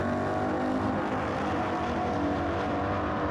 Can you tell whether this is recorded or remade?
recorded